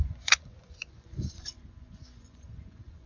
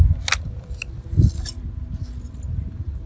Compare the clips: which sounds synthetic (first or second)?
first